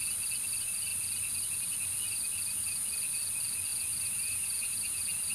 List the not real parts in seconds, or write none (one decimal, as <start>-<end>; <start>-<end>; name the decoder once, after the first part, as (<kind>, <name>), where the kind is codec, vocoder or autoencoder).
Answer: 3.7-5.3 (vocoder, Vocos)